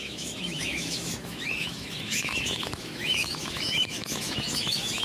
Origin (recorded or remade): remade